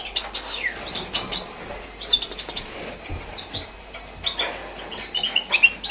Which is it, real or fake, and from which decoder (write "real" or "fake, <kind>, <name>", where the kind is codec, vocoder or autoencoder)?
real